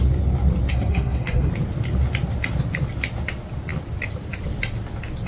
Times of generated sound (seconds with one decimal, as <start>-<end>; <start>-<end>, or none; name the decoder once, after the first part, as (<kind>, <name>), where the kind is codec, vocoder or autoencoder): 0.7-1.5 (codec, SNAC)